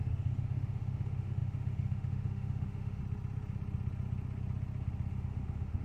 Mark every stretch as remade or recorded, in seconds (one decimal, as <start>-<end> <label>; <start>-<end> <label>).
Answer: 0.0-3.0 remade; 3.0-5.1 recorded; 5.1-5.8 remade